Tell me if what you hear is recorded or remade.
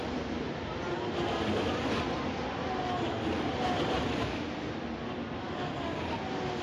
recorded